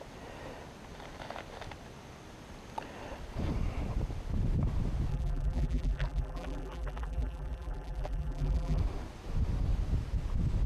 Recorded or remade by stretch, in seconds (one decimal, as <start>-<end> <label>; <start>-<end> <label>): 0.0-5.1 recorded; 5.1-8.8 remade; 8.8-10.7 recorded